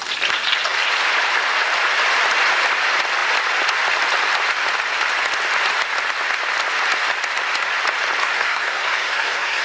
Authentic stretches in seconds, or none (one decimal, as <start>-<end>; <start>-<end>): 0.0-8.2